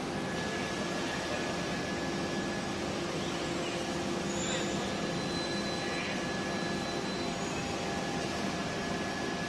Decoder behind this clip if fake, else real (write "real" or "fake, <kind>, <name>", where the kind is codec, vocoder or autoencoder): real